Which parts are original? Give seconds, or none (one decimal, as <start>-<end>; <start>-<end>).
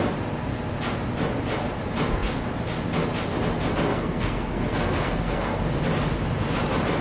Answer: 0.0-3.9; 5.6-7.0